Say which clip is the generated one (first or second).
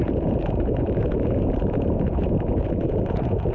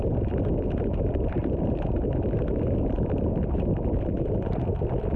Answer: first